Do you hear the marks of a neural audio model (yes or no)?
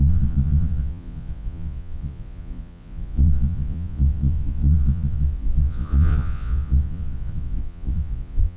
yes